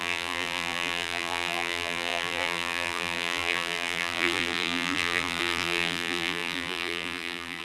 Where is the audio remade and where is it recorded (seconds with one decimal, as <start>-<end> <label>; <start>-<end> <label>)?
0.0-7.6 remade